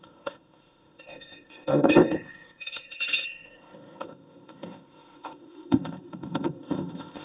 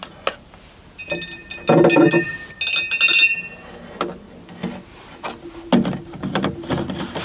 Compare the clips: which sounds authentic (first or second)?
second